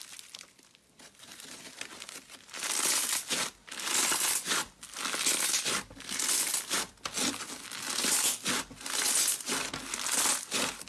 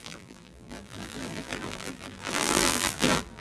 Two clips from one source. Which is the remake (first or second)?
second